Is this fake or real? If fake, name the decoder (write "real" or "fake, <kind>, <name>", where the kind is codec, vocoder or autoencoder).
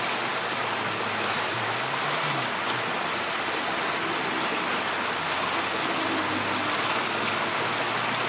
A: real